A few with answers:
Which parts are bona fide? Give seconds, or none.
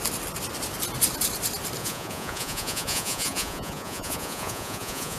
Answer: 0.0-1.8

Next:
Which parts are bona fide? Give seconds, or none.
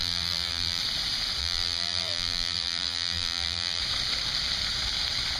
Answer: 0.8-1.4; 3.8-5.4